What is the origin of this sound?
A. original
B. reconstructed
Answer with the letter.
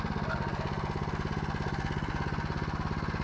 A